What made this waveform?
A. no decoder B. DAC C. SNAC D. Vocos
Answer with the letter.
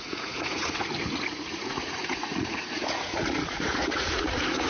D